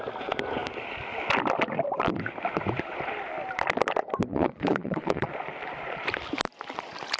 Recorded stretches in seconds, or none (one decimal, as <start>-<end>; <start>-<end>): 0.0-4.3; 5.3-7.2